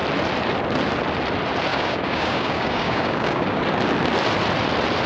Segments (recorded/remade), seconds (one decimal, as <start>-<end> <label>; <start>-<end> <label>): 0.0-1.7 recorded; 1.7-3.6 remade; 3.6-5.1 recorded

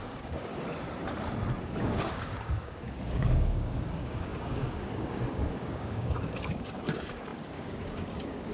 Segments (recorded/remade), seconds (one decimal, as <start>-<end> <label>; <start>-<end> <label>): 0.0-0.5 remade; 0.5-1.6 recorded; 1.6-8.5 remade

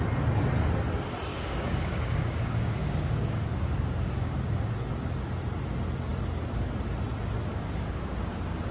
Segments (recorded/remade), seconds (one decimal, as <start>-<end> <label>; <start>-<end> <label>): 0.0-1.3 recorded; 1.3-4.7 remade; 4.7-7.5 recorded; 7.5-8.1 remade; 8.1-8.7 recorded

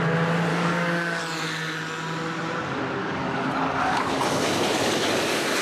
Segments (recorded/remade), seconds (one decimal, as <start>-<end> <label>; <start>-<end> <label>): 0.0-0.5 recorded; 0.5-1.2 remade; 1.2-3.0 recorded; 3.0-5.6 remade